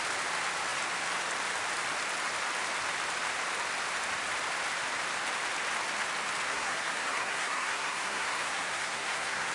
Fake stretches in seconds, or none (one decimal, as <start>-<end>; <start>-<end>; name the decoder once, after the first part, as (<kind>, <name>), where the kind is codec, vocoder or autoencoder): 6.5-9.5 (codec, SNAC)